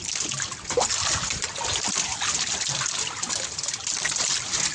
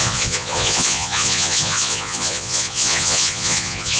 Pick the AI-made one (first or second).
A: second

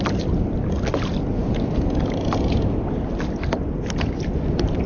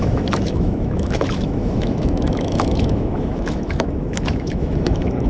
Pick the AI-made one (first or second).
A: second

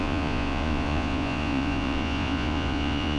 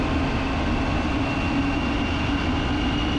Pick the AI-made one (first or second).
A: first